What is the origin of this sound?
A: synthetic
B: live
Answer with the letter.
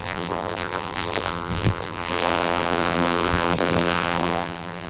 A